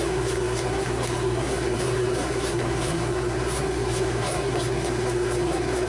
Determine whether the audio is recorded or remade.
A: remade